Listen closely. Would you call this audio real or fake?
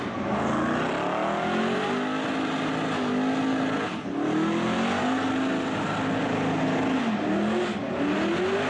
real